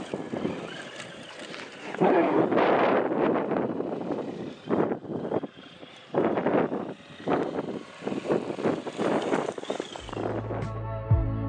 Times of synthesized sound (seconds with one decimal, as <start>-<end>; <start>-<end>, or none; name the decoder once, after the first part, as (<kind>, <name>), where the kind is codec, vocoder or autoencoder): 1.8-2.4 (codec, SNAC)